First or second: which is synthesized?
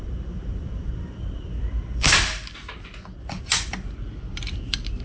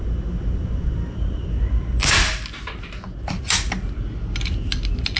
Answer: first